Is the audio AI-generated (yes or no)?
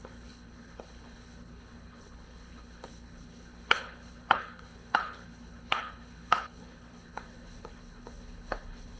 yes